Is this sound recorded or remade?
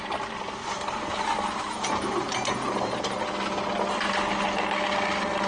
recorded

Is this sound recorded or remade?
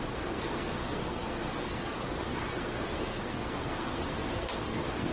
remade